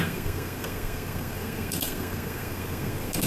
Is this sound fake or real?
fake